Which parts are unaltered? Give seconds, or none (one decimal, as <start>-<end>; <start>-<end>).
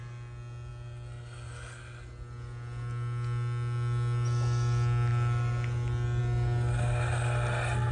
0.0-7.9